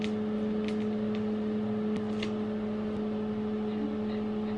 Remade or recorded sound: recorded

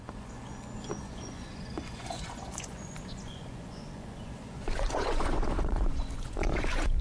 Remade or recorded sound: remade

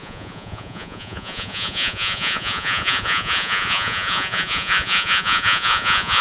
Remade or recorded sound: remade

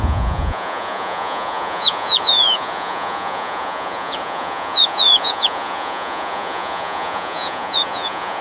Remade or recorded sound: remade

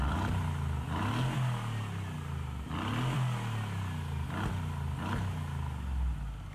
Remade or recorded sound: recorded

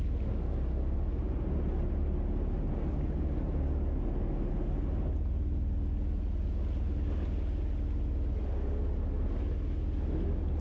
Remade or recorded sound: recorded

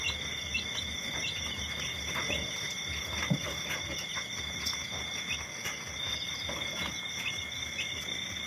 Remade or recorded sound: recorded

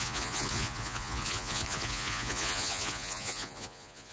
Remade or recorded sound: remade